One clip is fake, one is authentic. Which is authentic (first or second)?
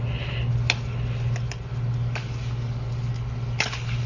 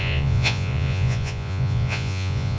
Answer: first